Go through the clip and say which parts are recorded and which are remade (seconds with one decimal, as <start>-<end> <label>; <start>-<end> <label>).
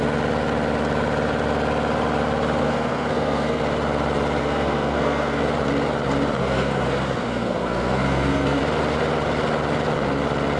0.0-2.6 recorded; 2.6-3.6 remade; 3.6-4.4 recorded; 4.4-5.4 remade; 5.4-6.4 recorded; 6.4-8.6 remade; 8.6-10.6 recorded